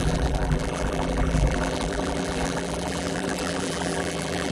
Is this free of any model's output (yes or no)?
no